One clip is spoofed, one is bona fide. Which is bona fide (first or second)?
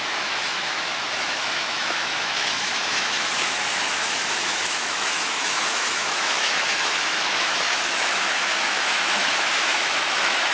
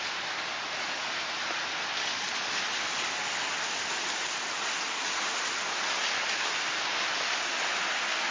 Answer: second